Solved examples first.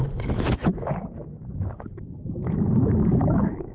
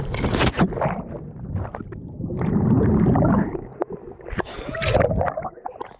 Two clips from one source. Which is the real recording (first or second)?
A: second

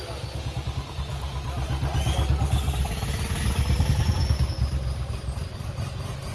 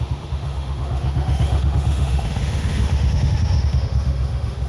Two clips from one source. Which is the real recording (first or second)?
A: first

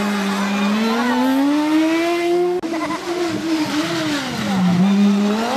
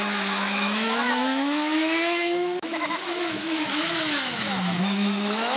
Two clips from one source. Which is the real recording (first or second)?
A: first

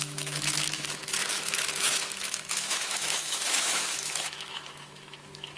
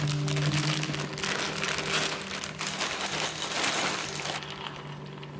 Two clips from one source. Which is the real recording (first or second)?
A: second